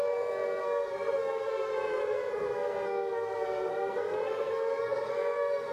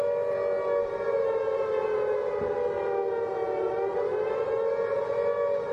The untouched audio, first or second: second